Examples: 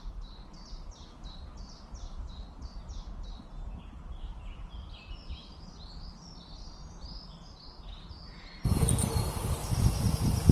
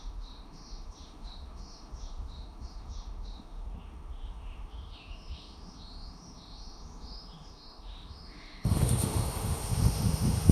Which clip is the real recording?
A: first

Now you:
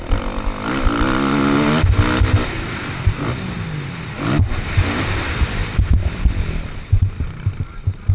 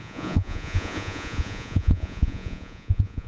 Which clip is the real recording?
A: first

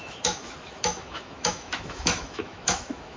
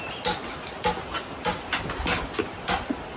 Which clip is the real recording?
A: second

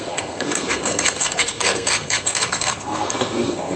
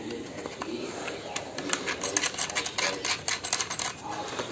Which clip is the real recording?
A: second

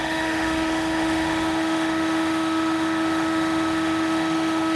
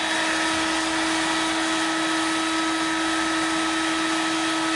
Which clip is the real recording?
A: second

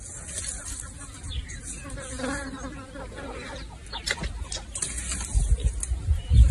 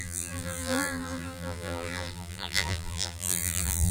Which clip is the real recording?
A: first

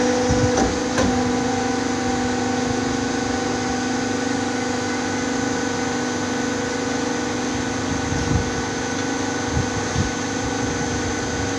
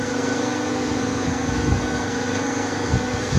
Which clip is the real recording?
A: first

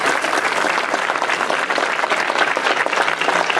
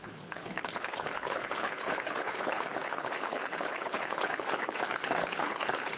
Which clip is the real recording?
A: first